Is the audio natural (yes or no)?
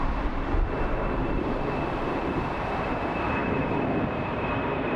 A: no